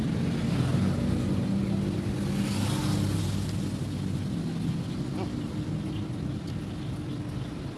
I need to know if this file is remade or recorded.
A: recorded